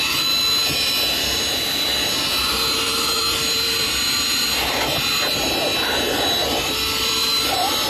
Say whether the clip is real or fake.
fake